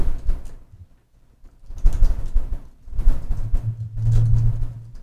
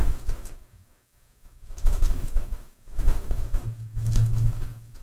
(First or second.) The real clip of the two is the first